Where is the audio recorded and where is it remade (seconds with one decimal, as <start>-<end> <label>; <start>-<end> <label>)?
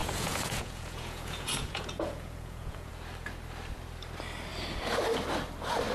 0.0-2.9 remade; 2.9-5.9 recorded